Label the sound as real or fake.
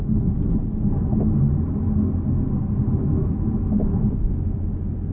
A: real